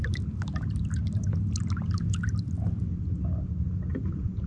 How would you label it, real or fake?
real